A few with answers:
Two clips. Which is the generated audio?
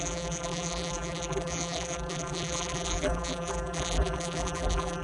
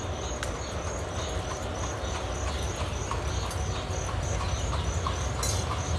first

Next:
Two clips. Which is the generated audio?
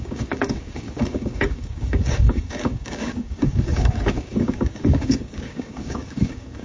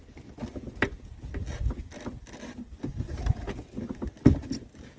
first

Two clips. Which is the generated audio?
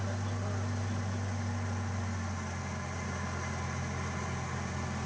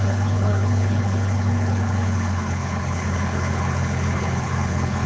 second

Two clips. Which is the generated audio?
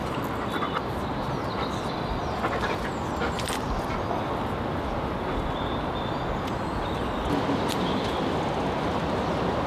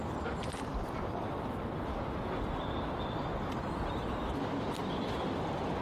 second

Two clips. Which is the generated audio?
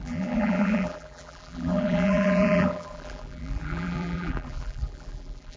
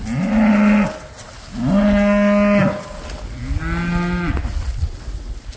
first